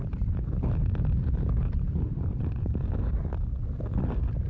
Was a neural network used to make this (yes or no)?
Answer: no